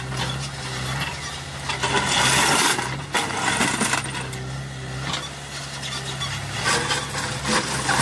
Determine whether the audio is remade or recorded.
recorded